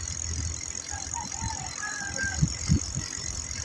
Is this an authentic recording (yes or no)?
yes